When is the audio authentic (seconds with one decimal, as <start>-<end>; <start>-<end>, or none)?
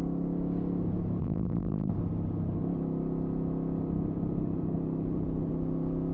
0.0-1.2; 1.9-6.1